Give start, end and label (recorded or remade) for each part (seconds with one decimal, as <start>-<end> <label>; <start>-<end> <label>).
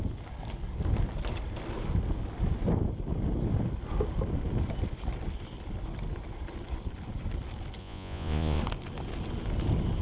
0.0-7.8 recorded; 7.8-8.6 remade; 8.6-10.0 recorded